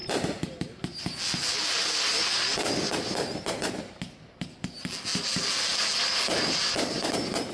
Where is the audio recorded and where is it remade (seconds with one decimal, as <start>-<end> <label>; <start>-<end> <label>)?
0.0-7.5 recorded